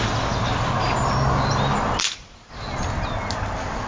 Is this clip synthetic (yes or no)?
no